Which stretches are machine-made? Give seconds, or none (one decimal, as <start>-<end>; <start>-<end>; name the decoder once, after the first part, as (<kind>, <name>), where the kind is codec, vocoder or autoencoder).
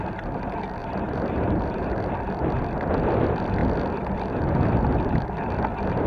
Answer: 0.8-1.9 (vocoder, BigVGAN v2)